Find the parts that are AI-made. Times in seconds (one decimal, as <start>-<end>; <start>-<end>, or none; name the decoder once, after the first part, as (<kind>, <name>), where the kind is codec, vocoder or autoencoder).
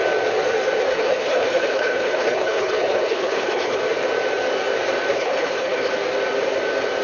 0.9-3.8 (codec, HILCodec); 5.1-5.9